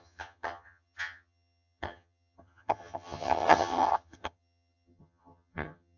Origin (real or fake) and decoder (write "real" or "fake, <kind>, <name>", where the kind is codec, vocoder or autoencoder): fake, vocoder, HiFi-GAN